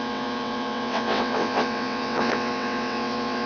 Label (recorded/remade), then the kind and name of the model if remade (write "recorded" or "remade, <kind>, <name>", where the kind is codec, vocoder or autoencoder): remade, vocoder, WaveNeXt